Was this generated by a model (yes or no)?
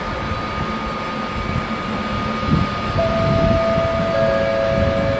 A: no